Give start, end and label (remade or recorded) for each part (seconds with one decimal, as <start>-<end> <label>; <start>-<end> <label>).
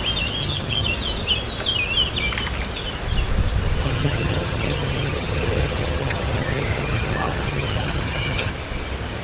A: 0.0-0.4 recorded; 0.4-0.9 remade; 0.9-3.8 recorded; 3.8-8.5 remade; 8.5-9.2 recorded